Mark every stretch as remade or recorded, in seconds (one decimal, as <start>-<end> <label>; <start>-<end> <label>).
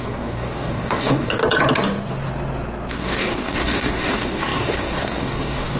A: 0.0-1.4 remade; 1.4-2.9 recorded; 2.9-5.8 remade